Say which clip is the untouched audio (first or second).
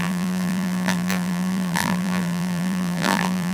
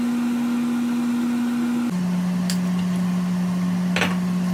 second